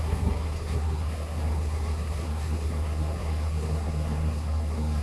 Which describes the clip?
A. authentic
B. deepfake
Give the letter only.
B